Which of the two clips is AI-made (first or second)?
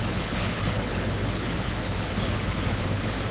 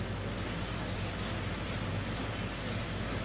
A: first